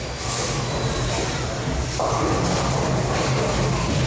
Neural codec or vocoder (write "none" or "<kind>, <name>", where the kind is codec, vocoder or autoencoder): none